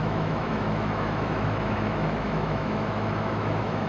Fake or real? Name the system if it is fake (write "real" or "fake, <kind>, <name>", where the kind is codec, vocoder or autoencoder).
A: fake, autoencoder, DAC-VAE